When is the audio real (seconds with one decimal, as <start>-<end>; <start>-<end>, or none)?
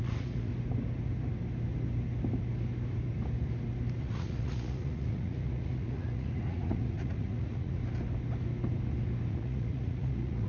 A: 0.5-4.0; 7.8-9.3